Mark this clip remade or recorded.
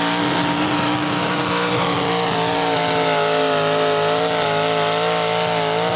recorded